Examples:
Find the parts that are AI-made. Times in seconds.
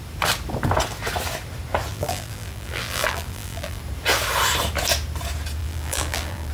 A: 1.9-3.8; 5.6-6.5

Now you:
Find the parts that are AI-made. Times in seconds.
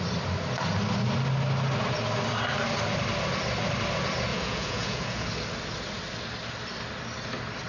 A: 4.3-5.3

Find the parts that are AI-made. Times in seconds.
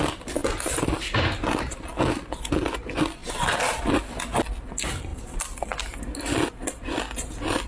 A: none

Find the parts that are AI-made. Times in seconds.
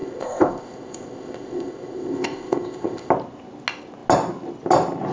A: 0.0-3.1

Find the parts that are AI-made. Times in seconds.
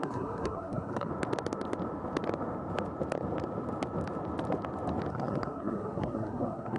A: 0.0-1.1; 5.1-6.8